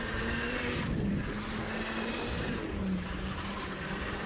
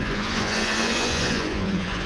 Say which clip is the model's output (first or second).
second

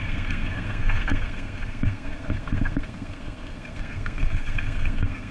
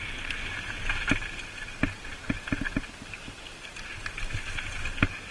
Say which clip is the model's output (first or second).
first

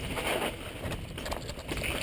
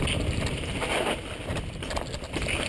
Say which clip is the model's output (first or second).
second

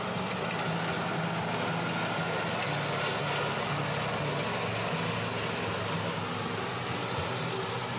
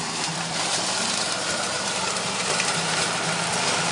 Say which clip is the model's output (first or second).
second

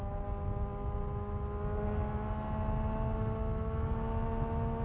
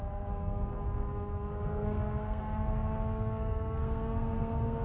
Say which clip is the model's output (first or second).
second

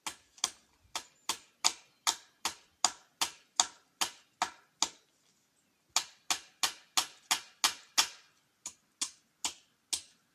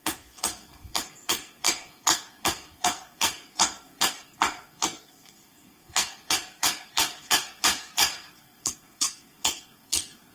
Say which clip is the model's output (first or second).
second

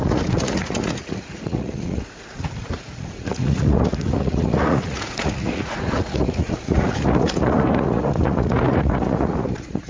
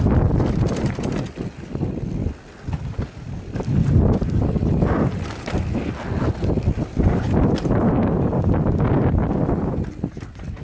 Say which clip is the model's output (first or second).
first